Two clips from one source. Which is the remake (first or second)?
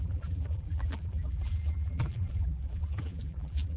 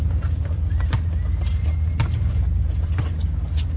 first